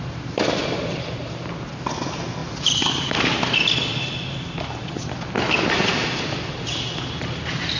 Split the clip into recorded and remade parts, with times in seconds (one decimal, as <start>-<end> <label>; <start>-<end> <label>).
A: 0.0-7.8 recorded